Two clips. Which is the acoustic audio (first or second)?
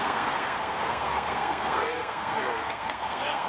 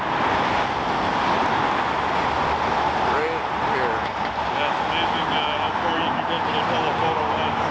second